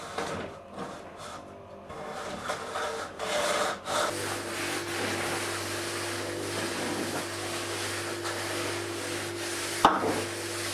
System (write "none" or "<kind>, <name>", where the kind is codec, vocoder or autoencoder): none